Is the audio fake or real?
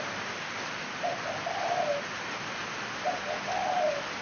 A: real